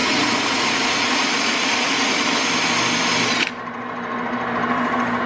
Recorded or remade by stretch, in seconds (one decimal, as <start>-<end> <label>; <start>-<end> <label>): 0.0-2.2 remade; 2.2-5.3 recorded